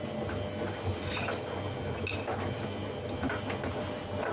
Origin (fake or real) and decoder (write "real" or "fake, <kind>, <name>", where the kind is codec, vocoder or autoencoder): real